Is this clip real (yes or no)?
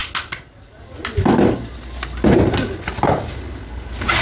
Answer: yes